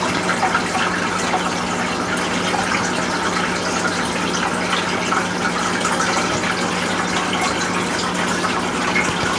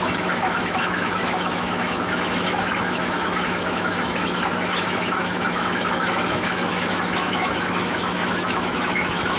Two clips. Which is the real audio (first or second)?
first